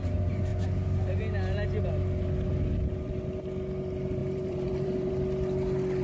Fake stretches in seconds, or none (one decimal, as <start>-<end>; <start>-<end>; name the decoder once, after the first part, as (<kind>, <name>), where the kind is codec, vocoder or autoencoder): 4.2-5.1 (vocoder, BigVGAN v2)